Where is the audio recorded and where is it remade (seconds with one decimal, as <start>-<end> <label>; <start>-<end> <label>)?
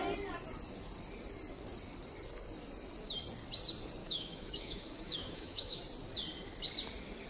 0.0-4.0 recorded; 4.0-5.8 remade; 5.8-7.3 recorded